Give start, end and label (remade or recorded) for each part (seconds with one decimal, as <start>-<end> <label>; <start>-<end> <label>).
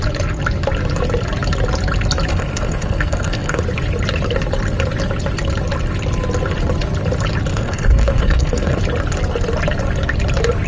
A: 0.0-2.3 recorded; 2.3-3.6 remade; 3.6-7.5 recorded; 7.5-8.8 remade; 8.8-10.7 recorded